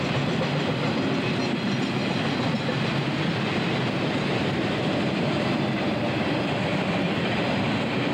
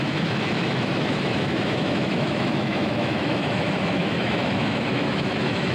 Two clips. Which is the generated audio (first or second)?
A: second